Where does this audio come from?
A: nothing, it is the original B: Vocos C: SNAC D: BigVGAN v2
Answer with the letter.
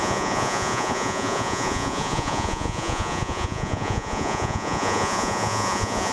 B